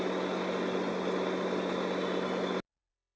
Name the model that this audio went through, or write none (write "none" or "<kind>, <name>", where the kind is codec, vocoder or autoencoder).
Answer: none